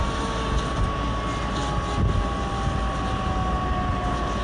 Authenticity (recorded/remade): recorded